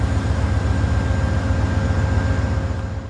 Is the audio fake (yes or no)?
no